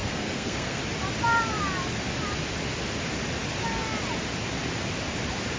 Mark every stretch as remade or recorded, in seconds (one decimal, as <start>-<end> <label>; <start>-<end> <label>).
0.0-0.8 remade; 0.8-5.6 recorded